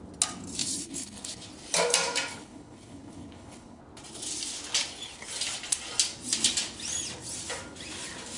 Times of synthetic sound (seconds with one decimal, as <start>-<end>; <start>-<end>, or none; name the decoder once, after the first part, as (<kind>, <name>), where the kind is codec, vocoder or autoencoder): 0.6-1.5 (codec, HILCodec); 2.3-3.8